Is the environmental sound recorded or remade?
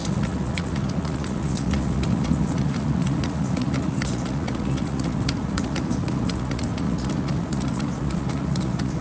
remade